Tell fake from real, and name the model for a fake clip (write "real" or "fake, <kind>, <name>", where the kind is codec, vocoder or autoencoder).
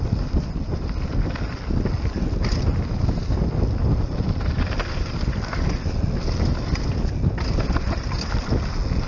real